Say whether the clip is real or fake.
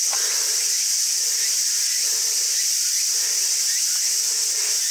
real